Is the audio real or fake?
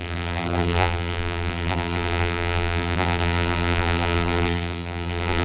fake